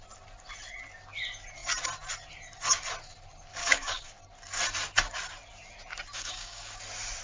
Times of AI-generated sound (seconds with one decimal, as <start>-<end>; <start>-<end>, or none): 3.6-4.1; 6.1-6.8